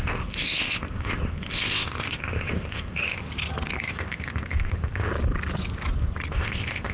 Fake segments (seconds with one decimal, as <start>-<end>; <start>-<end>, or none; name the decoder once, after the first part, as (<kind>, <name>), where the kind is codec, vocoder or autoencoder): 0.0-3.2 (codec, ZipCodec); 3.8-5.1; 6.3-6.9